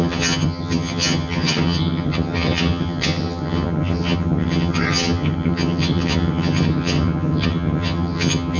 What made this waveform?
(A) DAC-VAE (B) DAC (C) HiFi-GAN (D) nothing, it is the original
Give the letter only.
C